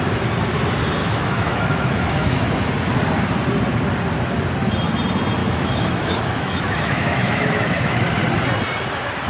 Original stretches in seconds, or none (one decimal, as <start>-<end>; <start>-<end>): 0.0-1.0; 2.3-5.4; 8.1-9.3